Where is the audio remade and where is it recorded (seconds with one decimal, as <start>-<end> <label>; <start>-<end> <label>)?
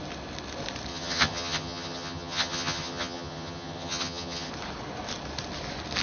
0.0-0.9 recorded; 0.9-4.5 remade; 4.5-6.0 recorded